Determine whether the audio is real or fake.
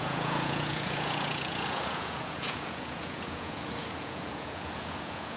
fake